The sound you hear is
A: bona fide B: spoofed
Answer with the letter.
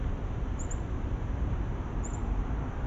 B